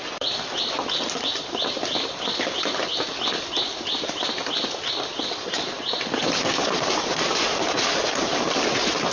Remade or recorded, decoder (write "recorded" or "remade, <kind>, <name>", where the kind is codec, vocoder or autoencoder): recorded